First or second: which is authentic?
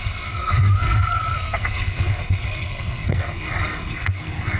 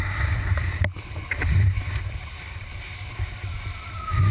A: second